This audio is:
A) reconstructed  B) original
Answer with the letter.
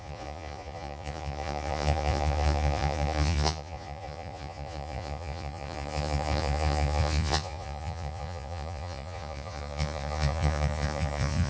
A